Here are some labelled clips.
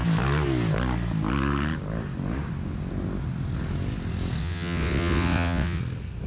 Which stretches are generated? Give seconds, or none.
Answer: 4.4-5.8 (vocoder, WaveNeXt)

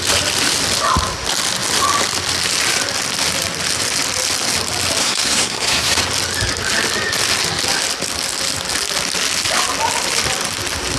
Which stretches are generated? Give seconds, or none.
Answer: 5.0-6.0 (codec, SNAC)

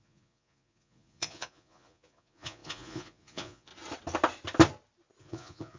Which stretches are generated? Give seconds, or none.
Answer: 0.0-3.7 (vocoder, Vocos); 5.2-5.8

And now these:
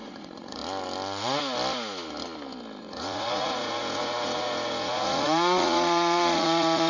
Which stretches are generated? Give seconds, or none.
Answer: 0.0-0.6 (vocoder, Vocos); 2.8-6.9

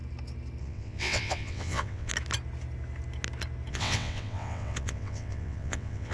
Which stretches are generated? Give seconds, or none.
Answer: 0.6-2.1 (vocoder, WaveNeXt); 3.7-6.1

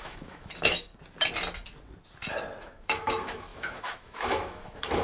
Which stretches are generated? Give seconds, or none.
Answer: 0.0-0.9 (autoencoder, DAC-VAE); 2.6-5.0

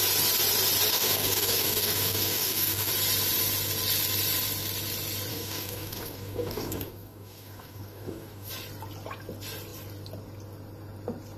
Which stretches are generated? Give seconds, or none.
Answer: 0.9-2.9 (codec, DAC); 5.3-8.5